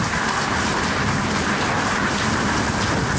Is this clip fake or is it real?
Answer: real